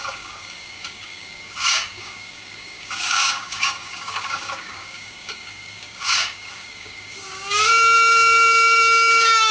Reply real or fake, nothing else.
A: fake